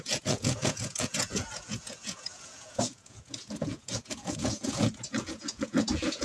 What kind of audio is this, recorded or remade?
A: remade